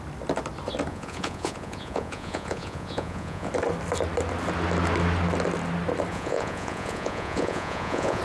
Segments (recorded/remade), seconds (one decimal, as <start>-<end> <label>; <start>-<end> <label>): 0.0-0.9 recorded; 0.9-3.5 remade; 3.5-6.1 recorded; 6.1-8.2 remade